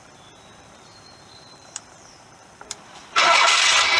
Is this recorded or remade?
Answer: remade